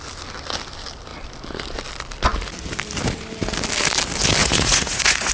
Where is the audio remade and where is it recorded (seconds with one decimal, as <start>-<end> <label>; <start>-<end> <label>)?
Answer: 0.0-4.4 recorded; 4.4-5.3 remade